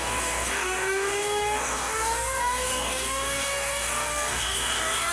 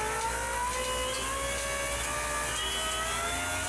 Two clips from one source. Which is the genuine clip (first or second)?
second